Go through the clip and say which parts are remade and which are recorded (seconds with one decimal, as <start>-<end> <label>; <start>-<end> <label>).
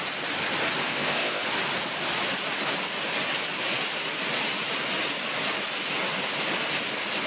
0.0-0.8 recorded; 0.8-1.4 remade; 1.4-7.3 recorded